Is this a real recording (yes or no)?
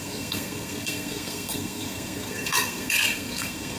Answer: no